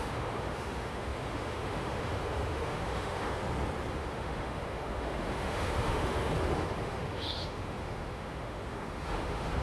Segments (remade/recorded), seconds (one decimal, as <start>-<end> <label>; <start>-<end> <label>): 0.0-3.4 remade; 3.4-3.9 recorded; 3.9-9.6 remade